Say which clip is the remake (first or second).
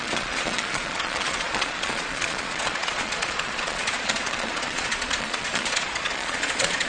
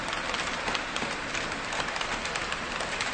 first